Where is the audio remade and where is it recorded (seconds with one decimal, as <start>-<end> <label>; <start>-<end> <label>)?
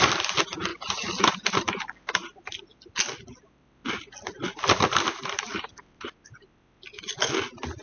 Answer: 0.0-7.8 recorded